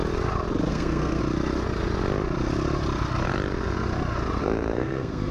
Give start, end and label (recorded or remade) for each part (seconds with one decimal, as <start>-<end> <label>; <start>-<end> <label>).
0.0-0.7 recorded; 0.7-1.2 remade; 1.2-4.4 recorded; 4.4-5.3 remade